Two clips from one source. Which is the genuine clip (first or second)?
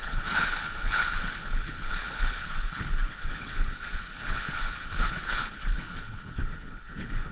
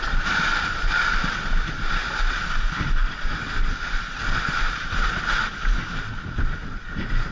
second